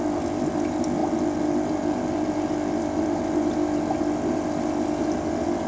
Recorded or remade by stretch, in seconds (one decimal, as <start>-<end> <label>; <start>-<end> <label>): 0.0-5.7 recorded